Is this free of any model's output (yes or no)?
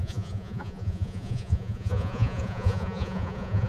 no